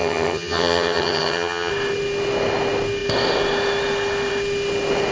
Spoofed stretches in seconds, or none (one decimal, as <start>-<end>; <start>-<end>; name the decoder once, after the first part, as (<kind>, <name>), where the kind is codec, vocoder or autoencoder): 0.0-1.7 (vocoder, HiFi-GAN)